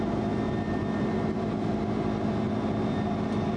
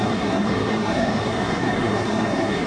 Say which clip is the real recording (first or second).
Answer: first